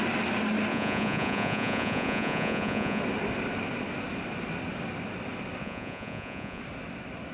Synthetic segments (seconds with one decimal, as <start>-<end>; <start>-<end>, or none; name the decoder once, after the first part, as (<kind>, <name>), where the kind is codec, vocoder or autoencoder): 0.7-3.0 (vocoder, Vocos); 5.6-6.6